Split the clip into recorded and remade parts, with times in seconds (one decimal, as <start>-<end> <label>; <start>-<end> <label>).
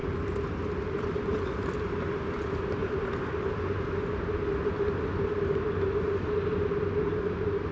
0.0-2.0 remade; 2.0-2.8 recorded; 2.8-3.8 remade; 3.8-7.7 recorded